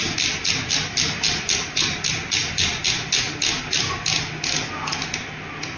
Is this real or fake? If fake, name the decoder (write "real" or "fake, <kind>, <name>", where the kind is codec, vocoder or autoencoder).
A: real